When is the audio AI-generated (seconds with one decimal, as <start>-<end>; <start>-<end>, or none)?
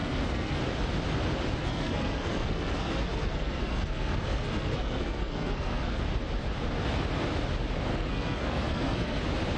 0.0-0.6; 1.6-6.0; 7.9-9.2